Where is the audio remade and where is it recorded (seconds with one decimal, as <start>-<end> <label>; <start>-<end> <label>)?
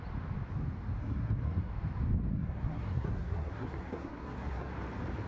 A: 0.0-1.0 recorded; 1.0-1.7 remade; 1.7-2.3 recorded; 2.3-4.7 remade; 4.7-5.3 recorded